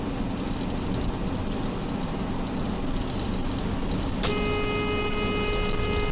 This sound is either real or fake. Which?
real